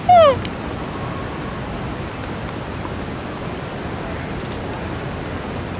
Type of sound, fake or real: real